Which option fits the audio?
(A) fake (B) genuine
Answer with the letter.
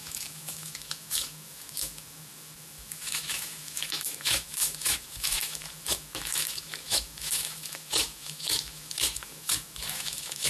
A